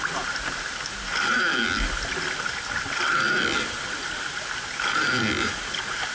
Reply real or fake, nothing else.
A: real